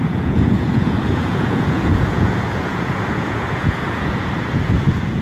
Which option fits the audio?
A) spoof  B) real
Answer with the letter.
A